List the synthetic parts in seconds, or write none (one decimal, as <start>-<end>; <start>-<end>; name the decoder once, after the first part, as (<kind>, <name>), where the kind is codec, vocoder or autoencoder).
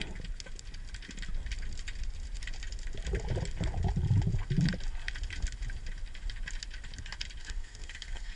7.4-8.4 (codec, SNAC)